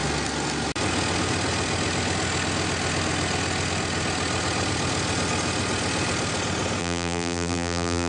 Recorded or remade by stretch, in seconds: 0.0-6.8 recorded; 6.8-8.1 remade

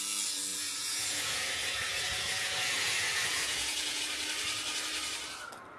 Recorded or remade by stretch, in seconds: 0.0-0.5 recorded; 0.5-4.0 remade; 4.0-5.8 recorded

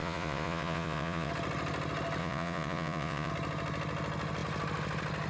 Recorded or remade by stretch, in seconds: 0.0-1.3 remade; 1.3-2.2 recorded; 2.2-3.3 remade; 3.3-5.3 recorded

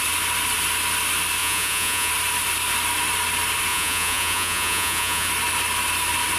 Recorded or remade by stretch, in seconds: 0.0-1.4 recorded; 1.4-2.1 remade; 2.1-3.7 recorded; 3.7-5.3 remade; 5.3-6.4 recorded

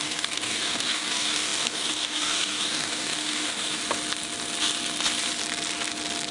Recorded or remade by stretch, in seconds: 0.0-3.8 remade; 3.8-6.3 recorded

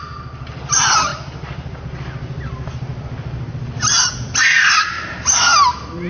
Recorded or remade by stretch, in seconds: 0.0-6.1 recorded

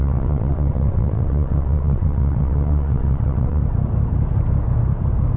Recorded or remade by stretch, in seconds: 0.0-3.6 remade; 3.6-5.4 recorded

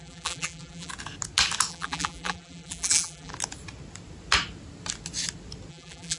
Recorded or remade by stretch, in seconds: 0.0-0.9 remade; 0.9-1.7 recorded; 1.7-3.3 remade; 3.3-5.7 recorded; 5.7-6.2 remade